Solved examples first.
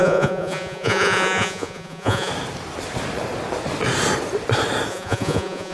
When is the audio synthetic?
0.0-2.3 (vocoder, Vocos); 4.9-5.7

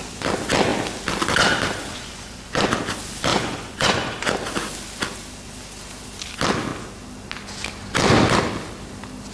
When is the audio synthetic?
1.9-2.7 (vocoder, Vocos); 3.3-4.3

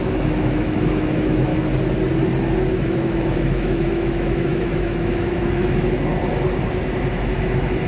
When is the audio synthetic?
0.0-1.5 (autoencoder, DAC-VAE); 2.7-6.1; 7.1-7.9

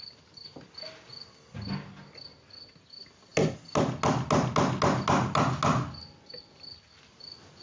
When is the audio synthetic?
none

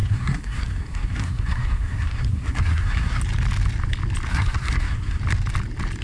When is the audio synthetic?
0.0-3.2 (codec, SNAC); 4.3-5.2

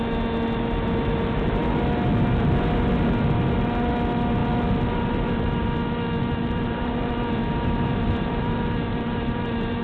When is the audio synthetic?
4.4-5.8 (vocoder, BigVGAN v2); 6.4-9.8

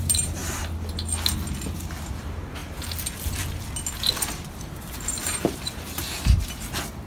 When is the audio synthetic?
0.0-0.4 (vocoder, BigVGAN v2); 2.1-2.6; 4.5-6.0

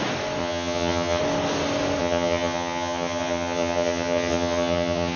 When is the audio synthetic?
0.4-1.2 (vocoder, HiFi-GAN); 2.0-5.2